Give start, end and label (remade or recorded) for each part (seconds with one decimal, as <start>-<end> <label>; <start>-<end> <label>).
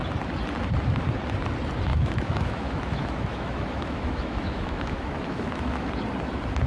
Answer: 0.0-1.9 recorded; 1.9-5.9 remade; 5.9-6.7 recorded